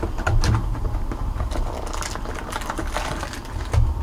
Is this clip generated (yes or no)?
no